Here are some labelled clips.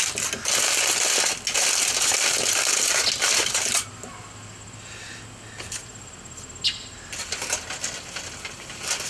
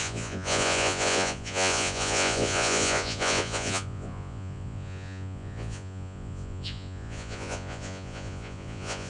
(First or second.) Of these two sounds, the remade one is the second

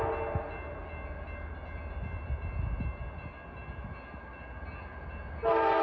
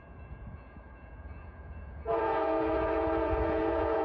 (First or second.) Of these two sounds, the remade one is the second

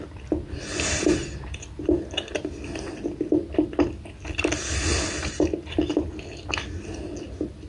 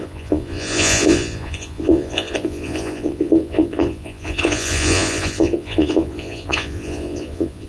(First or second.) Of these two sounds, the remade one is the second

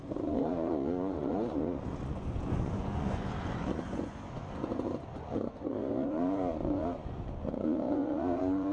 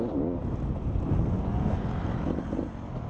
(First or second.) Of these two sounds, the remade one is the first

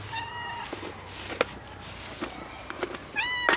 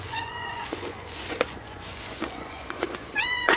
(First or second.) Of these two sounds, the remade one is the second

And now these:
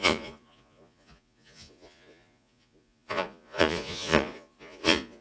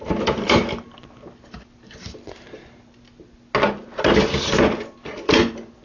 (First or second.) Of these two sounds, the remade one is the first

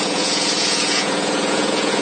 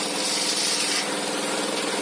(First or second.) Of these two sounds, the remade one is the first